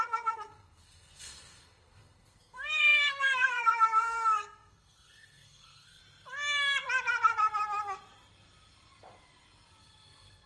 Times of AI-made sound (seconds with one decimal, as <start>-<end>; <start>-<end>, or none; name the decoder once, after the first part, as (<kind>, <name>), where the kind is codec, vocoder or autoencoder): 0.0-6.0 (codec, SNAC); 9.8-10.5